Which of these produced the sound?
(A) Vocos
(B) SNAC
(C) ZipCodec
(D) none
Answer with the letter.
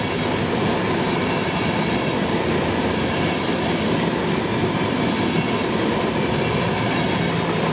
D